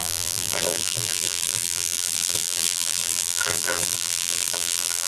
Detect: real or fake fake